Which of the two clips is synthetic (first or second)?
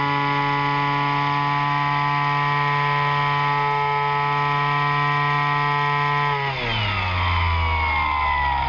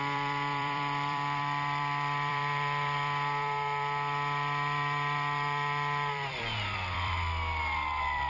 second